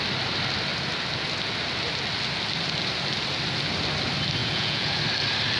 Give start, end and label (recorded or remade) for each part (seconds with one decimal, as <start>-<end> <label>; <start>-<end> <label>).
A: 0.0-4.4 recorded; 4.4-5.0 remade; 5.0-5.6 recorded